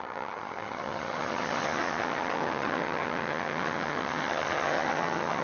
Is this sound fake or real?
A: fake